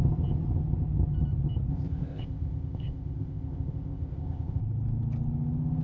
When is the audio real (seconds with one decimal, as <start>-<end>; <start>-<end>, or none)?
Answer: 0.0-1.7; 4.6-5.8